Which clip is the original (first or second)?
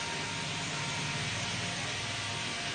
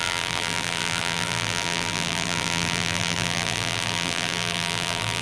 first